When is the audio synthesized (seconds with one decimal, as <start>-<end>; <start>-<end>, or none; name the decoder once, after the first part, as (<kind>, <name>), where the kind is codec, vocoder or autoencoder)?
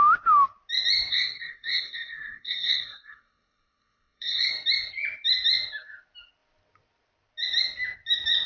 1.1-4.5 (codec, SNAC)